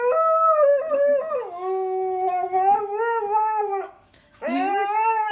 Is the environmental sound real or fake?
fake